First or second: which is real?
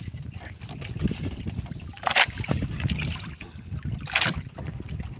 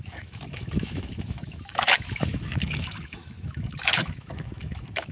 first